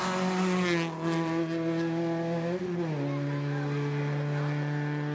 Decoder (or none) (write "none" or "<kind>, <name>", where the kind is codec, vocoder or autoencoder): none